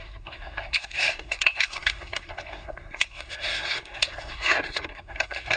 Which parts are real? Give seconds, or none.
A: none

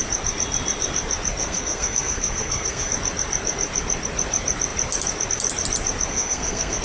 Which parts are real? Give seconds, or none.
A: 0.0-1.4; 2.9-6.1

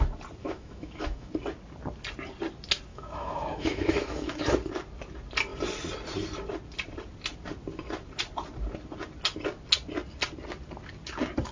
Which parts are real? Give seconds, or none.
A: 0.0-0.4; 1.3-2.9; 4.4-11.5

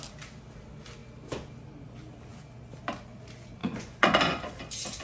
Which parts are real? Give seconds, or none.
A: 0.0-3.6; 4.6-5.0

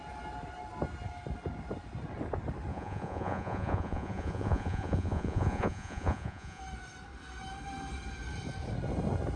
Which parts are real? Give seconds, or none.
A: 0.0-2.7; 6.6-9.4